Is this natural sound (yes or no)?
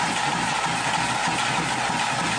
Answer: yes